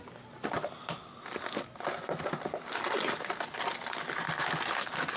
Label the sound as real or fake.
real